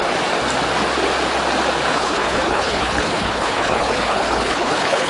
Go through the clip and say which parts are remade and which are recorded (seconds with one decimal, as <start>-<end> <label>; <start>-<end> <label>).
0.0-1.9 recorded; 1.9-5.1 remade